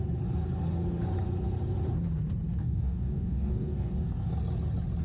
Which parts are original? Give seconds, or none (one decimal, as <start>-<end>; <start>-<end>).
0.0-2.6; 4.3-5.0